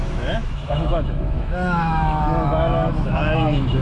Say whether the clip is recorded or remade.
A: remade